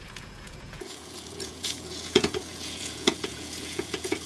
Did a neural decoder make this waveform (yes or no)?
yes